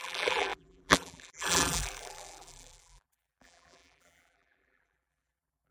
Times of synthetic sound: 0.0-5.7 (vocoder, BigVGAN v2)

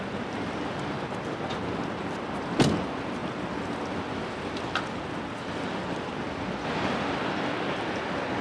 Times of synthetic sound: none